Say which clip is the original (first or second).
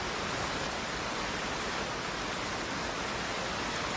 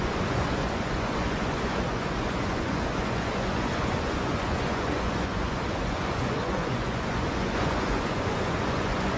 first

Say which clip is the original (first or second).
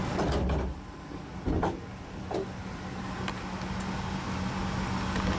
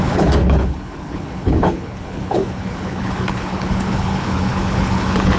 first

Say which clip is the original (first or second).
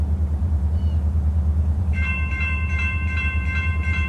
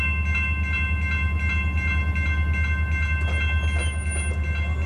second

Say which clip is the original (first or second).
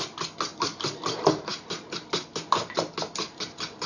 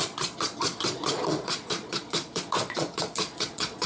first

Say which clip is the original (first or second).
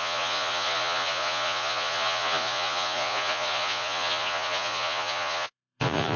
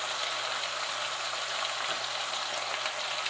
second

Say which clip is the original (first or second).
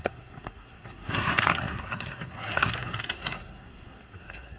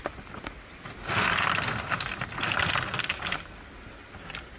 second